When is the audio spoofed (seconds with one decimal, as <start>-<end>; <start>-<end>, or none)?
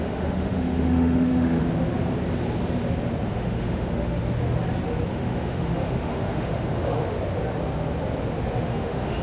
0.0-1.6; 3.3-4.2; 5.1-7.0; 8.6-9.2